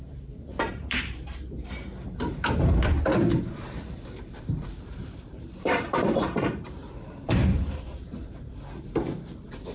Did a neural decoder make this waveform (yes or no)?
yes